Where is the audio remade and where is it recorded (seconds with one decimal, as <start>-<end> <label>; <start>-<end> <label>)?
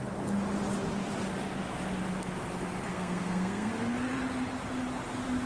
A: 0.0-2.9 recorded; 2.9-3.7 remade; 3.7-5.5 recorded